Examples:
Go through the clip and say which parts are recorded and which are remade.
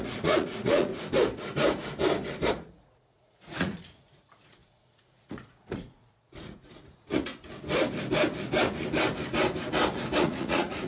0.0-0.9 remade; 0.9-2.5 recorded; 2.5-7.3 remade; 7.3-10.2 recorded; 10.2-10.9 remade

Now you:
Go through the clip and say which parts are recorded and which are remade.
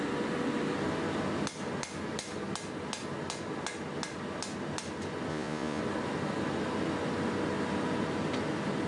0.0-5.3 recorded; 5.3-5.8 remade; 5.8-8.9 recorded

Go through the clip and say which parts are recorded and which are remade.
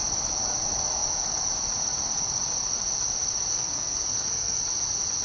0.0-3.5 recorded; 3.5-4.6 remade; 4.6-5.2 recorded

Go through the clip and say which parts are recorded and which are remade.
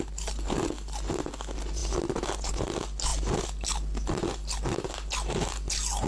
0.0-6.1 recorded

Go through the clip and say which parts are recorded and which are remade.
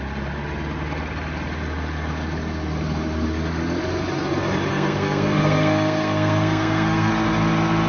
0.0-4.7 recorded; 4.7-7.1 remade; 7.1-7.9 recorded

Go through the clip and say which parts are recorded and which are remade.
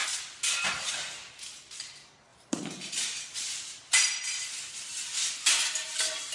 0.0-2.3 recorded; 2.3-4.3 remade; 4.3-6.3 recorded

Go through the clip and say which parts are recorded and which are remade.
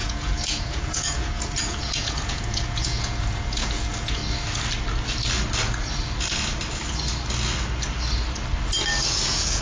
0.0-4.2 remade; 4.2-9.0 recorded; 9.0-9.6 remade